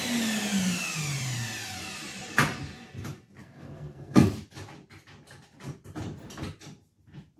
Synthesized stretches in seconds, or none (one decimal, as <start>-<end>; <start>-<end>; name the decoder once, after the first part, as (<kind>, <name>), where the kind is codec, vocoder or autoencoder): 3.4-4.3 (codec, SNAC)